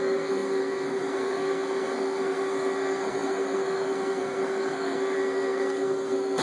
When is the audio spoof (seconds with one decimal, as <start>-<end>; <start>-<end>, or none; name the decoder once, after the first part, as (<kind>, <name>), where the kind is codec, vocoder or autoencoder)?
0.0-6.4 (codec, SNAC)